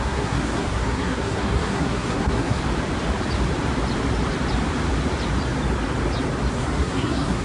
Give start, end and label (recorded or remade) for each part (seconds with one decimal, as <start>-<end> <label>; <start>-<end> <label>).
0.0-2.6 remade; 2.6-6.5 recorded; 6.5-7.4 remade